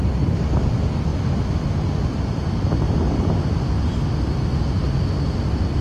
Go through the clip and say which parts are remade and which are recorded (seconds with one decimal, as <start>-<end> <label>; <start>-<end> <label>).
0.0-5.8 recorded